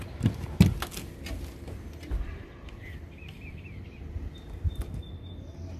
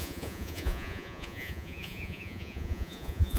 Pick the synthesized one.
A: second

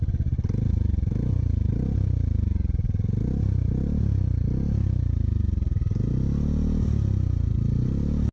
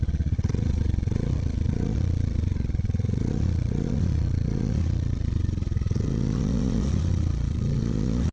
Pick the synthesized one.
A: second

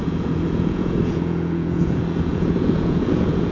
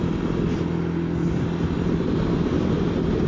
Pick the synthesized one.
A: first